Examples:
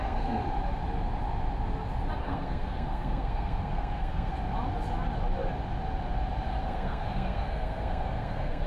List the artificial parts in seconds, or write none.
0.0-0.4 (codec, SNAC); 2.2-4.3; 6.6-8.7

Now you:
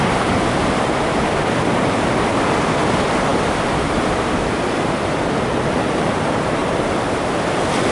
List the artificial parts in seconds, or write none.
none